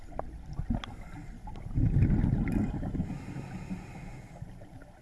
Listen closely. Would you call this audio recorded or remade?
recorded